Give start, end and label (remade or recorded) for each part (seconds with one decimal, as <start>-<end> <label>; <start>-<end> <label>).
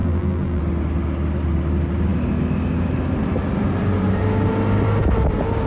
0.0-0.6 remade; 0.6-5.7 recorded